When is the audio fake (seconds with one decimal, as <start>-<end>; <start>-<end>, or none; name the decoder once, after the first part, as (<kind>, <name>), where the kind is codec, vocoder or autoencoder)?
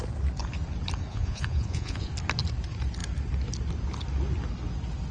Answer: 1.1-2.1 (vocoder, Vocos)